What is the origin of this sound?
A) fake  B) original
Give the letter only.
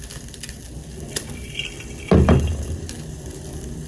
B